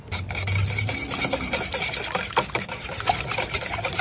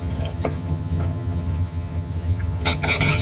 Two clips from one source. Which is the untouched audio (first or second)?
first